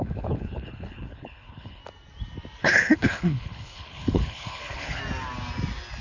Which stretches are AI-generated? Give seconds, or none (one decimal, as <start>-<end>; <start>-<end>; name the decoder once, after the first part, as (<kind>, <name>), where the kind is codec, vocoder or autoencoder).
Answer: 0.0-1.8 (codec, HILCodec); 2.6-5.0